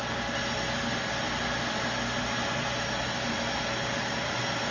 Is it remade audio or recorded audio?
recorded